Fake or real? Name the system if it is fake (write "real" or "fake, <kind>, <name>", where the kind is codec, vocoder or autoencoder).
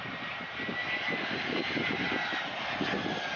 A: real